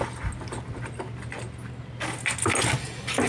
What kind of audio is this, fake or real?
real